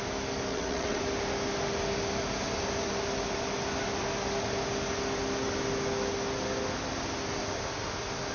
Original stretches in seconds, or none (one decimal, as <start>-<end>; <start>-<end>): 0.0-0.5; 1.0-8.3